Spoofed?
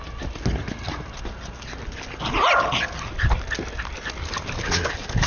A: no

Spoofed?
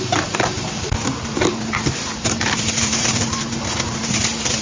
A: yes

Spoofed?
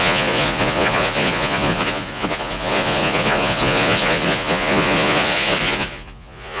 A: yes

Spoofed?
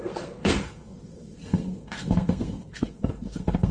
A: yes